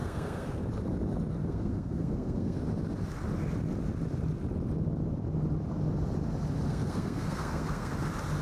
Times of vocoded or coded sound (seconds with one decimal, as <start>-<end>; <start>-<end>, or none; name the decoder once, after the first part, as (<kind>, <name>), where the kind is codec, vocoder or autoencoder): 0.0-0.6 (codec, SNAC); 1.4-2.6; 6.7-7.9